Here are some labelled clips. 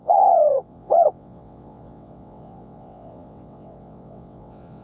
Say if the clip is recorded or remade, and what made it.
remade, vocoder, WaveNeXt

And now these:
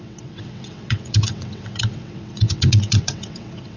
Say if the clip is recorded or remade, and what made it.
remade, vocoder, WaveNeXt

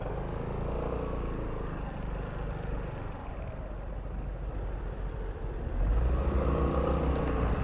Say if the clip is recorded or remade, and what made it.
recorded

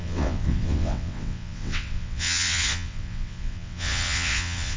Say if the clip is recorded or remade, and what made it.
remade, vocoder, WaveNeXt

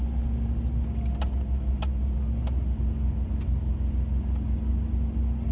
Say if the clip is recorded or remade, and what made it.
recorded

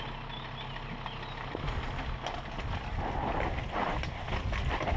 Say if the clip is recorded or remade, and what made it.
recorded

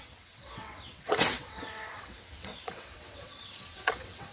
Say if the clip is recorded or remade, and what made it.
remade, vocoder, WaveNeXt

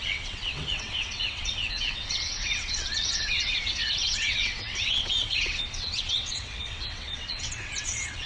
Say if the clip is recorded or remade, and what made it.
remade, vocoder, WaveNeXt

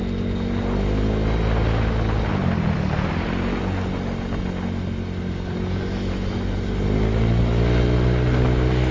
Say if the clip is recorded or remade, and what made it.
recorded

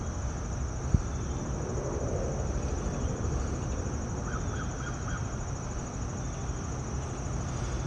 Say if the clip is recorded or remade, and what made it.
recorded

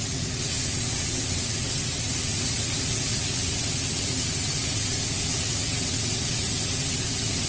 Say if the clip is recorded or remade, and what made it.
remade, vocoder, WaveNeXt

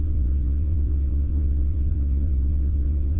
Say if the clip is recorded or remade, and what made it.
remade, vocoder, WaveNeXt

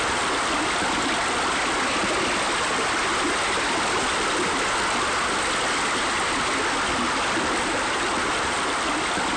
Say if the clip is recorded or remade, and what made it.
recorded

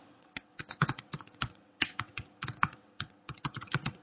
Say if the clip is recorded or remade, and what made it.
remade, vocoder, WaveNeXt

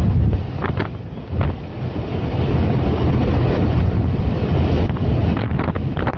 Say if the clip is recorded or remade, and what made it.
recorded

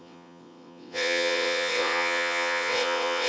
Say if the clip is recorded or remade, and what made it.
remade, vocoder, WaveNeXt